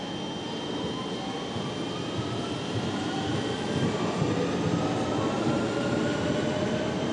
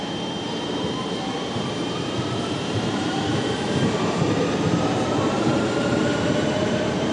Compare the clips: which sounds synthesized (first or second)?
second